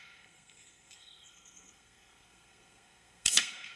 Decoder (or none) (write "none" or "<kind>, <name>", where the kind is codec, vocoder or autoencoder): codec, SNAC